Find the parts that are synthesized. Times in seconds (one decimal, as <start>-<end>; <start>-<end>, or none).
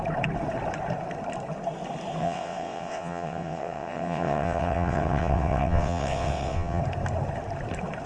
2.2-6.8